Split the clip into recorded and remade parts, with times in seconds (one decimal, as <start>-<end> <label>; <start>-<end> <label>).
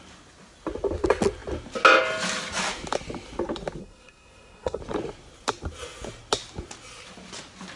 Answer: 0.0-3.8 recorded; 3.8-4.8 remade; 4.8-7.8 recorded